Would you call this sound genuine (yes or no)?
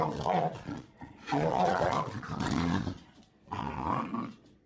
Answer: no